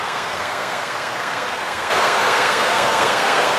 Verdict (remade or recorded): remade